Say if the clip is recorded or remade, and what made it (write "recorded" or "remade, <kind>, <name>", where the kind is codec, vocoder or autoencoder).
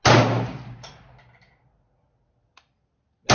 recorded